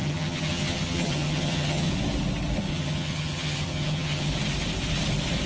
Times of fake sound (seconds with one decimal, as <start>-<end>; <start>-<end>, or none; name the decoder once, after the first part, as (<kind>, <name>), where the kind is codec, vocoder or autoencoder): 0.0-1.9 (vocoder, HiFi-GAN); 2.7-4.3